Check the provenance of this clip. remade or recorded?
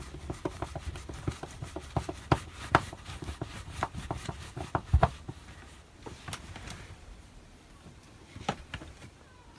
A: remade